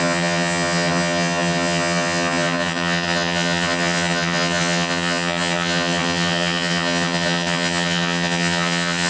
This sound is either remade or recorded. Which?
remade